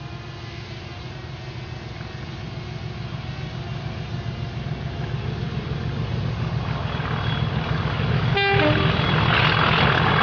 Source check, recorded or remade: recorded